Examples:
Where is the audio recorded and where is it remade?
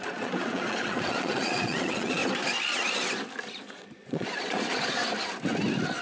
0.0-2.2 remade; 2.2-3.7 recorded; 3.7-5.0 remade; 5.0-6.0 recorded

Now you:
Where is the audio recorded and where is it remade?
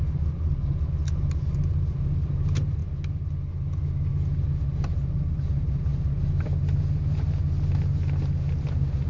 0.0-9.1 recorded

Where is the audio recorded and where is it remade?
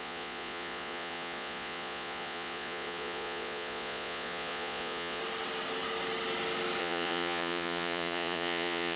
0.0-5.2 remade; 5.2-6.8 recorded; 6.8-9.0 remade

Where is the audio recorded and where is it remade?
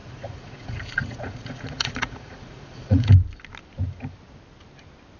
0.0-3.1 remade; 3.1-5.2 recorded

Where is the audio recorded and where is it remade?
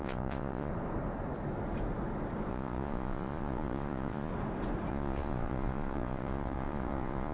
0.0-0.7 remade; 0.7-2.5 recorded; 2.5-4.3 remade; 4.3-4.9 recorded; 4.9-7.3 remade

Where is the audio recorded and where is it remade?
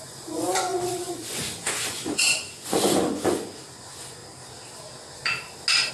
0.0-4.2 remade; 4.2-5.9 recorded